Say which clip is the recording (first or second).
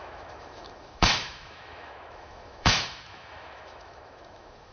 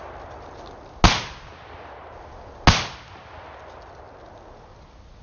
second